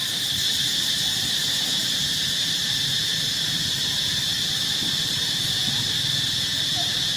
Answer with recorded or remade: remade